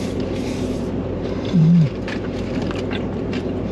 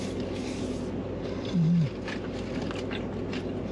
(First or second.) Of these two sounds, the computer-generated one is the first